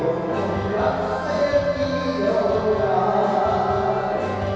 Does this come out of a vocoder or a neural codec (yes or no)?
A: no